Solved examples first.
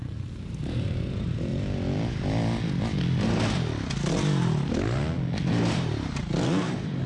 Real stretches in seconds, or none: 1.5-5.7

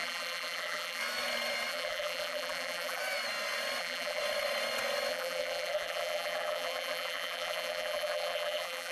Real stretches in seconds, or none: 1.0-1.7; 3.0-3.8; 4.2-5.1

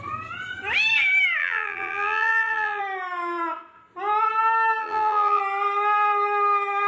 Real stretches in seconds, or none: 0.0-1.4; 2.8-4.8; 5.4-6.9

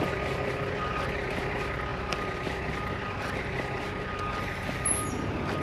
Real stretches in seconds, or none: 0.0-5.6

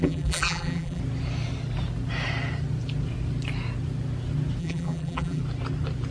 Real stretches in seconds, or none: 1.0-4.6; 5.4-6.1

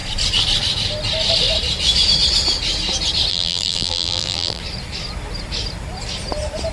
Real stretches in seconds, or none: 0.0-3.3; 4.6-6.7

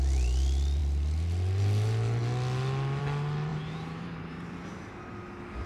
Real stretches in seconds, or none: 0.0-3.5; 4.9-5.7